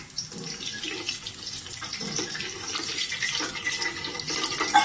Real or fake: fake